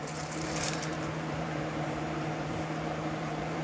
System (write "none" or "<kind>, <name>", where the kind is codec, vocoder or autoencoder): vocoder, BigVGAN v2